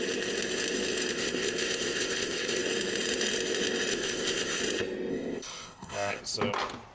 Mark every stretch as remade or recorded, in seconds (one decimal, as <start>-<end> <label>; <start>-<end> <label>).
0.0-1.1 recorded; 1.1-2.6 remade; 2.6-3.9 recorded; 3.9-4.6 remade; 4.6-5.1 recorded; 5.1-6.2 remade; 6.2-6.9 recorded